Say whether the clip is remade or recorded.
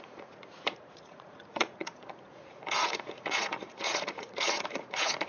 remade